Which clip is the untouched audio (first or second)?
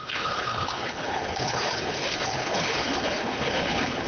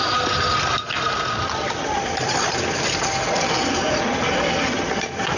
second